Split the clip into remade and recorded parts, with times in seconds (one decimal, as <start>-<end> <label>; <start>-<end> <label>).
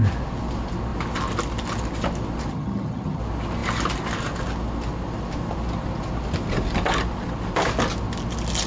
0.0-2.5 recorded; 2.5-3.2 remade; 3.2-8.7 recorded